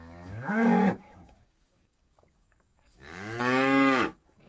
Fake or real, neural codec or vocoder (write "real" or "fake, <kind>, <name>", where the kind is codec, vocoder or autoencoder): fake, codec, DAC